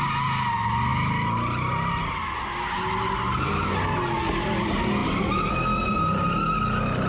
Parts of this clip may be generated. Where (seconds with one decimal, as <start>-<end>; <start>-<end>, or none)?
none